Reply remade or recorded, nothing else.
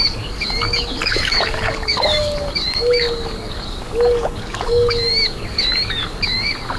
remade